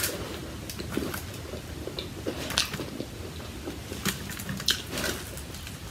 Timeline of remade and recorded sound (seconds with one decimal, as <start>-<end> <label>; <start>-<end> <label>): 0.0-5.9 recorded